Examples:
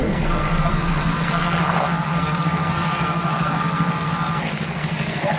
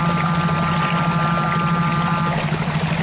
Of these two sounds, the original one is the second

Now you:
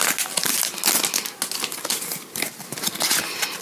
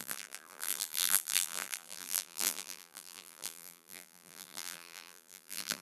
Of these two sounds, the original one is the first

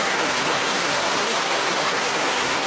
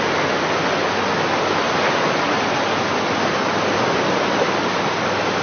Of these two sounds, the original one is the second